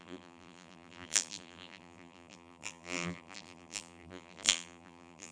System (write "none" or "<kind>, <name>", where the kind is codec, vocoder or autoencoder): vocoder, BigVGAN v2